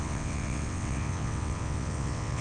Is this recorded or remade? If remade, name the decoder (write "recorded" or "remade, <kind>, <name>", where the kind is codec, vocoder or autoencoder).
remade, vocoder, WaveNeXt